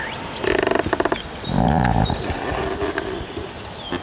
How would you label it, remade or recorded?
recorded